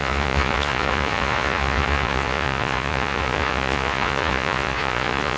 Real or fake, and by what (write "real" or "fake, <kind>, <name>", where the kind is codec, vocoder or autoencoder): fake, vocoder, Vocos